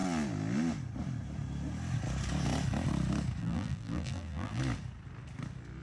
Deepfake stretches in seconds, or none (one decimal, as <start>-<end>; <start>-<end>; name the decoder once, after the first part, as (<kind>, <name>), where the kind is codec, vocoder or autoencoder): 3.4-4.6 (vocoder, BigVGAN v2)